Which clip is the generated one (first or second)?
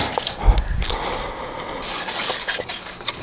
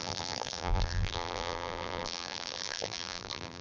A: second